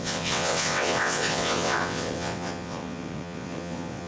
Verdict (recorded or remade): remade